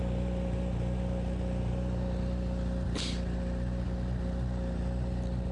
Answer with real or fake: real